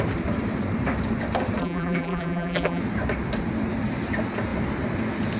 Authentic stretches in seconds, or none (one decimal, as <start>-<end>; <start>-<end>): 0.0-1.6; 2.8-5.4